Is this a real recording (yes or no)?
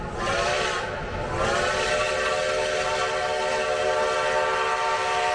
yes